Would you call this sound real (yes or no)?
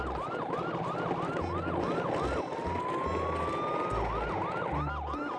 yes